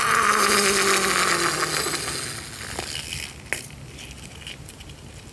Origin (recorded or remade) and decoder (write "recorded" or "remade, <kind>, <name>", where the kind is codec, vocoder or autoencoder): recorded